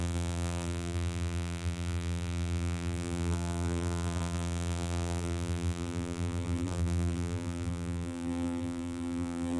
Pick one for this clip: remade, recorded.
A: remade